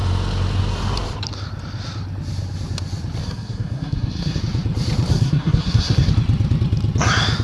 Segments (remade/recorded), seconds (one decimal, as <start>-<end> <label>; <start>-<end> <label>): 0.0-3.2 recorded; 3.2-4.4 remade; 4.4-5.1 recorded; 5.1-6.1 remade; 6.1-7.4 recorded